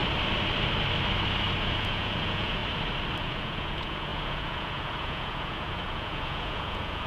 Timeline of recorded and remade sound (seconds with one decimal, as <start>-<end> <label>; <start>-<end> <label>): 0.0-1.6 recorded; 1.6-2.6 remade; 2.6-3.2 recorded; 3.2-7.1 remade